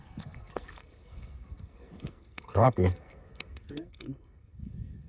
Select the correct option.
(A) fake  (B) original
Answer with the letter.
A